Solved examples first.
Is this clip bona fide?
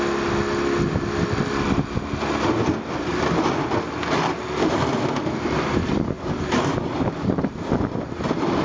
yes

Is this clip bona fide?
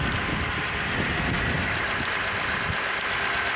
yes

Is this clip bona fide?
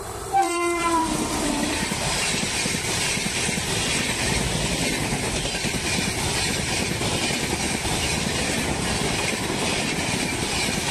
no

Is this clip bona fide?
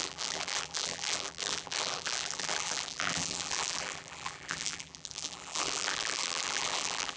no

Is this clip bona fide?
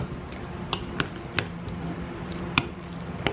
yes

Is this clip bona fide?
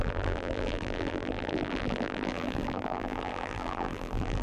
no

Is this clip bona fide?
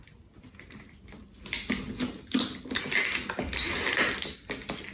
yes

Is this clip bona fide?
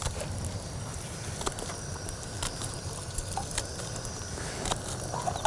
yes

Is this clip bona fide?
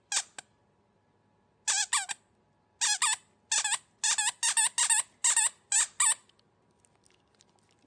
yes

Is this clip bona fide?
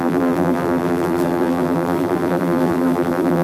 no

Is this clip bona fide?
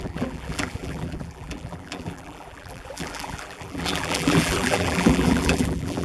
no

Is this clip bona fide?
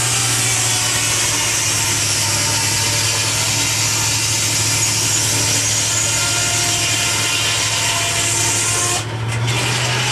yes